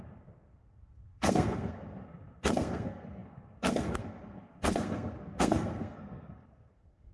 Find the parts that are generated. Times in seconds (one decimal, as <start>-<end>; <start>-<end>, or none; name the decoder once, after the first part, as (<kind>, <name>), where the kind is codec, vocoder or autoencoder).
0.0-7.1 (codec, SNAC)